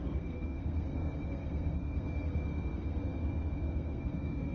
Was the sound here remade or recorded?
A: remade